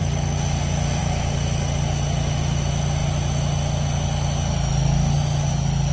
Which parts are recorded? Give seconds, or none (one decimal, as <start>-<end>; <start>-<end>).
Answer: 0.0-5.9